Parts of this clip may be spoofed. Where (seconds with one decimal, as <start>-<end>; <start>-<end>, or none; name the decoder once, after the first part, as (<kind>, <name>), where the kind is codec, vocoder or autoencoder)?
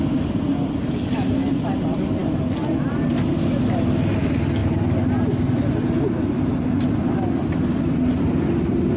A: none